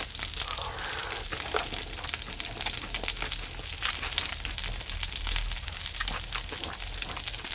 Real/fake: real